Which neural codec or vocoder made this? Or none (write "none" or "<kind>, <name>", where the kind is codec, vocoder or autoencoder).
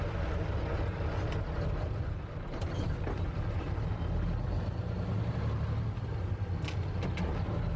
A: none